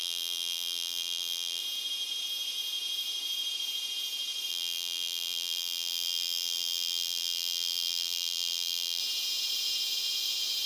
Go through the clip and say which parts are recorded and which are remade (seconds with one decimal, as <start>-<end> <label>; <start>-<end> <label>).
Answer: 0.0-1.6 remade; 1.6-4.5 recorded; 4.5-9.0 remade; 9.0-10.7 recorded